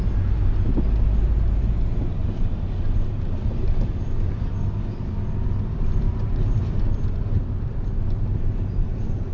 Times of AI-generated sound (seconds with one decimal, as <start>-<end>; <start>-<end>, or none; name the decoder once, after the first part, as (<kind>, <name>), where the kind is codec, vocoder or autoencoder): none